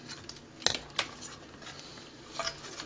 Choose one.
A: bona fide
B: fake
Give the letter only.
A